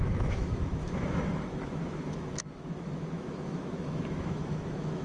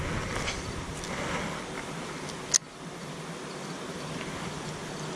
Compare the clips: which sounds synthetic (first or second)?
first